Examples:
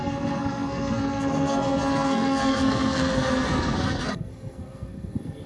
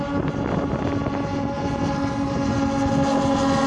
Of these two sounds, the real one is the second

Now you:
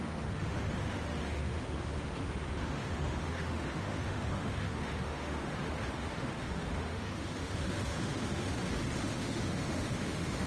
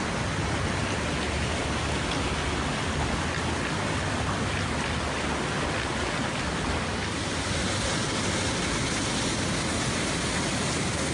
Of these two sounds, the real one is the second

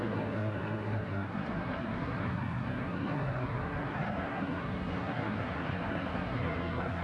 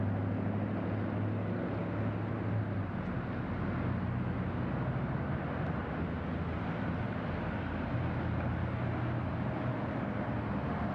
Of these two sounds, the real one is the second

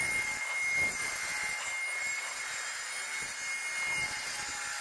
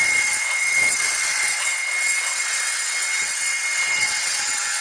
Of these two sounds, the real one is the first